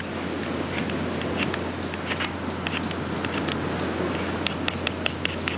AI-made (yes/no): no